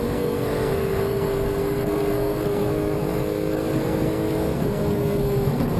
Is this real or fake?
fake